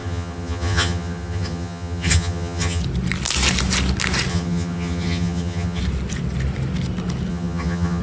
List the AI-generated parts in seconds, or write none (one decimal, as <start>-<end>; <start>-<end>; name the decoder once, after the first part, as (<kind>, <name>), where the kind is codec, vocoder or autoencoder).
0.0-2.8 (vocoder, HiFi-GAN); 4.3-5.8; 7.3-8.0